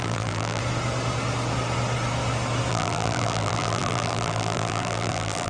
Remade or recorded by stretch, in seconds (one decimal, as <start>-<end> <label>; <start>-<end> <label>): 0.0-0.6 remade; 0.6-2.7 recorded; 2.7-5.5 remade